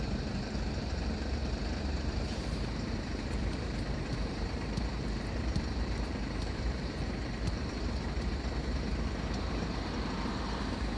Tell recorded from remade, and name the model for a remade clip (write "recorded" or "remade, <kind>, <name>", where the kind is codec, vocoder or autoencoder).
remade, vocoder, BigVGAN v2